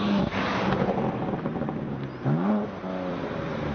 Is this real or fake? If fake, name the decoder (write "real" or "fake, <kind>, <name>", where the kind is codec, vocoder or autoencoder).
fake, vocoder, BigVGAN v2